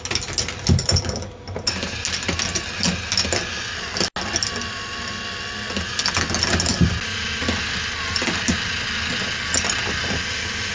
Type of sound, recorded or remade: recorded